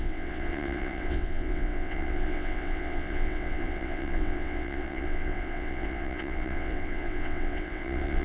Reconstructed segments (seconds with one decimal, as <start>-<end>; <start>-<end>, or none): 0.0-8.2